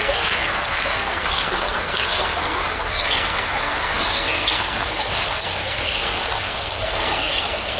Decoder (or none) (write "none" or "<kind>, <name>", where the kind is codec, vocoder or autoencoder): codec, SNAC